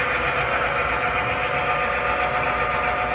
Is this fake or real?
real